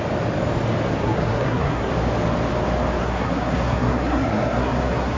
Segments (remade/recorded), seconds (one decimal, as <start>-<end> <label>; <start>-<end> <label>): 0.0-1.0 recorded; 1.0-1.9 remade; 1.9-3.0 recorded; 3.0-5.2 remade